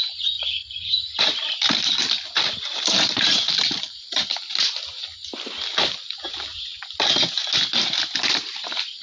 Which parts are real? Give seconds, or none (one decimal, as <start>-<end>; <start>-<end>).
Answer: 4.2-9.0